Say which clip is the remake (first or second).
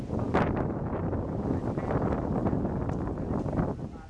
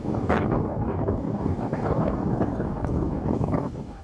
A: second